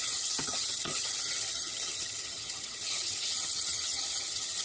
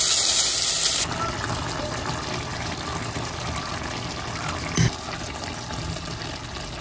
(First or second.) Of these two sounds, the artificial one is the first